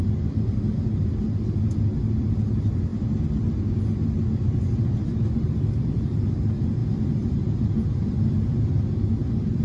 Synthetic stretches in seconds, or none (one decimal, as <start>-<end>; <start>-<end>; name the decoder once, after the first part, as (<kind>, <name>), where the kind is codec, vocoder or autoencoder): 6.8-8.8 (vocoder, BigVGAN v2)